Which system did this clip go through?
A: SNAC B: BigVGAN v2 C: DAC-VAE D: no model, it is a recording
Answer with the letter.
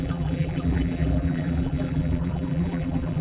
B